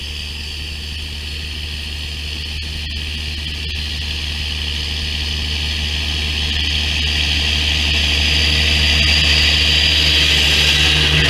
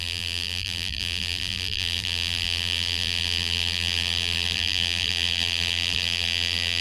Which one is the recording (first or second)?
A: first